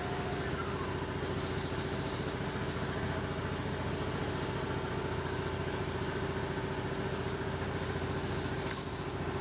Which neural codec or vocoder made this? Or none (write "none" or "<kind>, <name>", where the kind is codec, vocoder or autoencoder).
none